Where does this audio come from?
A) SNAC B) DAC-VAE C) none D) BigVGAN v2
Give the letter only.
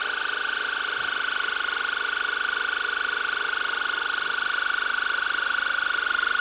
C